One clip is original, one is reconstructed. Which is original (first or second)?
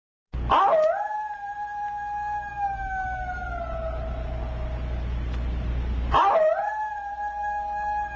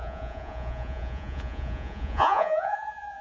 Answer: first